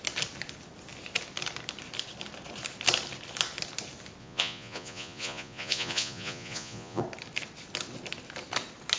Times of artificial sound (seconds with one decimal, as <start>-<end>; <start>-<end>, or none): 4.2-7.0